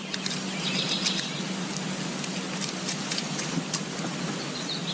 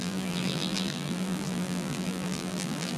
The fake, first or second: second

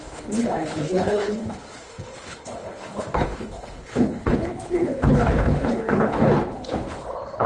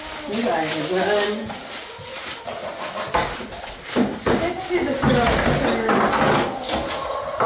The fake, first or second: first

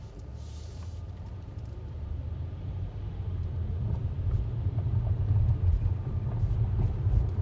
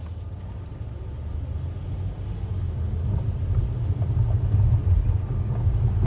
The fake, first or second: first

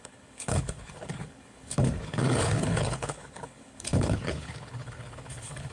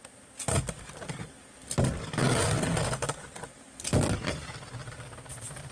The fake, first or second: first